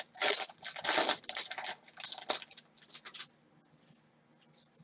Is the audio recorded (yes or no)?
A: yes